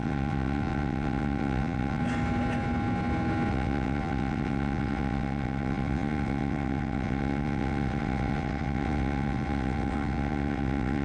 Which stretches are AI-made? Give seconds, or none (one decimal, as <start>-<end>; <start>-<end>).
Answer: 0.0-2.0; 3.5-11.0